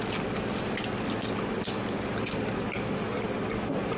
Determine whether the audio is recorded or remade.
recorded